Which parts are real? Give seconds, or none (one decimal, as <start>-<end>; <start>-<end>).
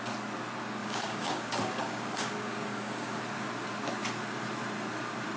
0.0-0.8; 3.2-5.4